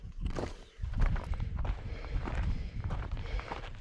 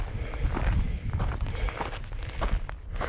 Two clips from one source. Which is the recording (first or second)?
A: second